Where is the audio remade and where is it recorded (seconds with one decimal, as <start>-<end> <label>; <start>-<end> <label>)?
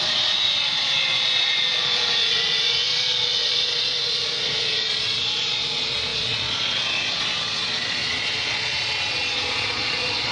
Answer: 0.0-10.3 remade